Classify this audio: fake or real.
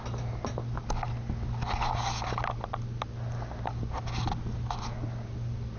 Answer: real